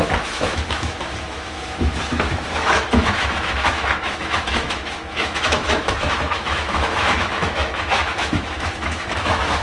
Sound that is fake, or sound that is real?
fake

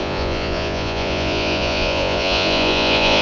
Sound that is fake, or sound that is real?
fake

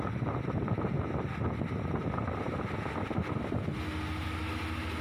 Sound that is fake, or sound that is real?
real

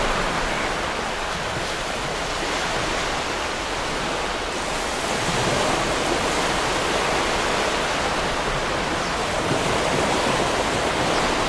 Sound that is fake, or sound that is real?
real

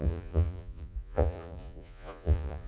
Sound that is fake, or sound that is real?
fake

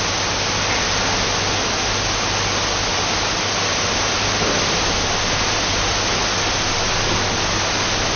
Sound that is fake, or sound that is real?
real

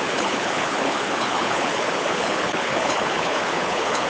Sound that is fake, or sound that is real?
fake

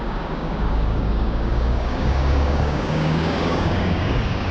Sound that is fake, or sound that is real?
fake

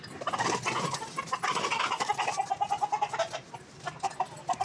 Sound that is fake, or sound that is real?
real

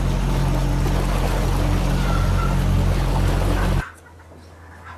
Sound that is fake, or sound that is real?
real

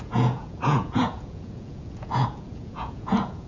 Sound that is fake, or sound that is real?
fake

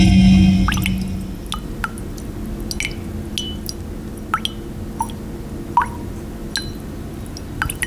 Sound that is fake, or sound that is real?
real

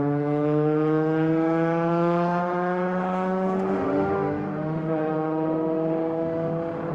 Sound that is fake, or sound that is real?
fake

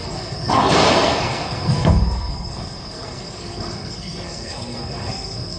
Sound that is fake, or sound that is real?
fake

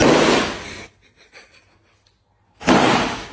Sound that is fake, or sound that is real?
real